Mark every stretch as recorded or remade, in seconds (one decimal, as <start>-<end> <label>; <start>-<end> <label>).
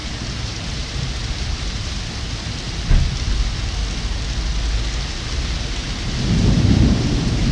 0.0-1.1 remade; 1.1-5.8 recorded; 5.8-7.5 remade